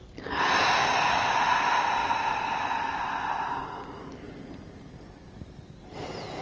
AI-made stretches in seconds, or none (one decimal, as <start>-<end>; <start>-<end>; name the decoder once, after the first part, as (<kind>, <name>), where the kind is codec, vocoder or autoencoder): none